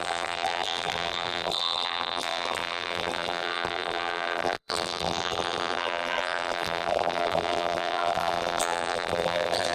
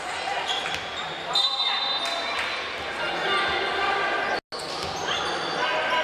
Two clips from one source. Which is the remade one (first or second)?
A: first